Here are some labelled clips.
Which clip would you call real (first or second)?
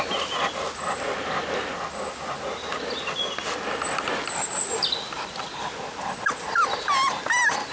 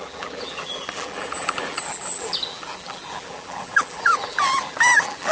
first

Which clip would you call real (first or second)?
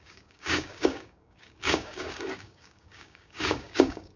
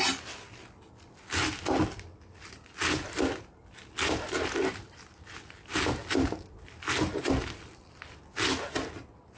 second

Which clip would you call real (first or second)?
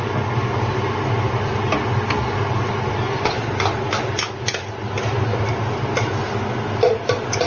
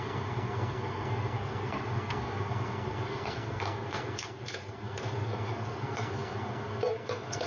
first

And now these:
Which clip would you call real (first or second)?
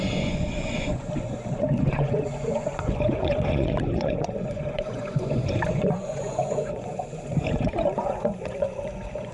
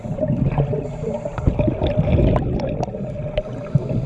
second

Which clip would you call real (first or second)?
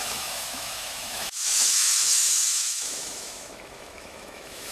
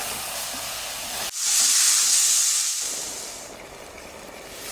second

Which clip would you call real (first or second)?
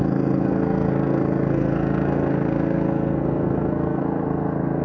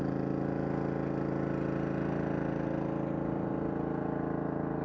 second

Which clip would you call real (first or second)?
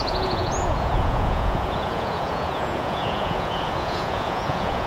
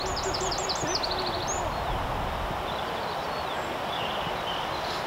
second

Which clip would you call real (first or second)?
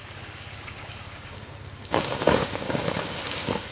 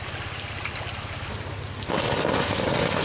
second